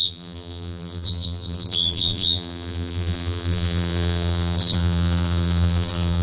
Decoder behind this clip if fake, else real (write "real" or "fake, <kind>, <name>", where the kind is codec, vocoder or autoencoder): fake, vocoder, BigVGAN v2